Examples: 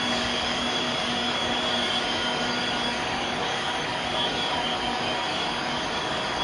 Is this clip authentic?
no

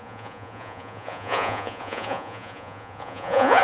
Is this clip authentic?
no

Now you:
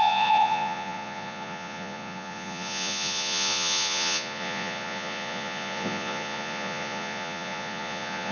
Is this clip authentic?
no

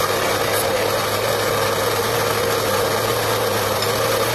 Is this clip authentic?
yes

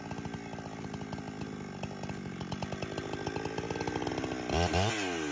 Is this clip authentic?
yes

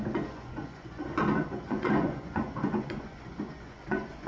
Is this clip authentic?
no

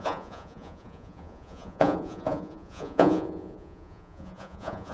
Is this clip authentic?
no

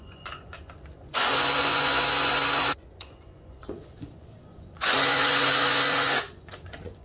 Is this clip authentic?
no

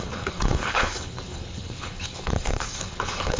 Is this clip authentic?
no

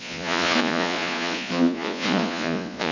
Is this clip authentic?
no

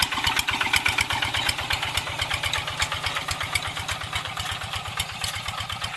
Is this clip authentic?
yes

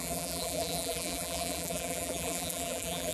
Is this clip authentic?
no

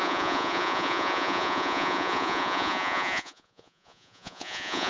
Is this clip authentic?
no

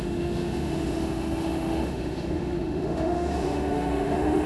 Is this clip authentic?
no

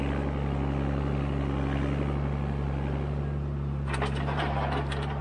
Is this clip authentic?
yes